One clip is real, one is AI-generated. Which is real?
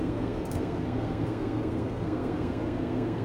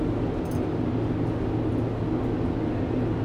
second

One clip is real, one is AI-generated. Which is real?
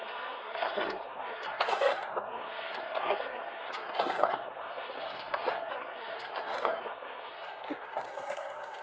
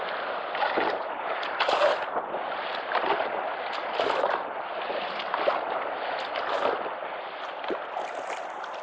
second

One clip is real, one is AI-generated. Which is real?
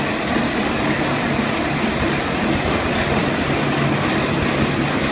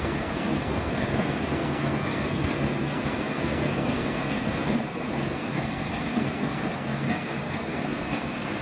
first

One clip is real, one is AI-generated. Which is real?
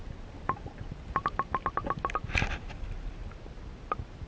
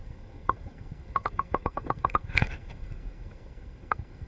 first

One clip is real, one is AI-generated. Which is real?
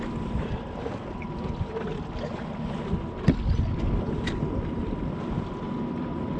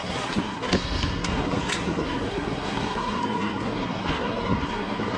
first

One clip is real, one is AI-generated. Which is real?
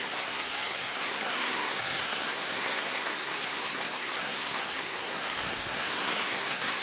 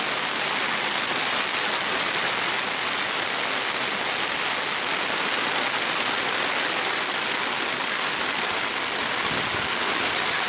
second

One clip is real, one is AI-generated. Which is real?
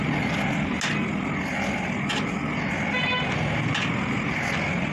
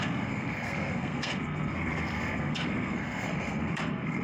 first